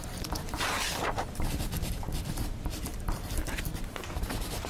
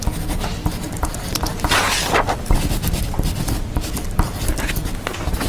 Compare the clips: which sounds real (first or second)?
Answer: second